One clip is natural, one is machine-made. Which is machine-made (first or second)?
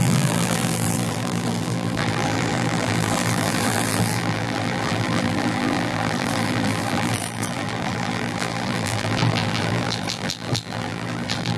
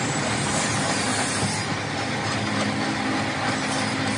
first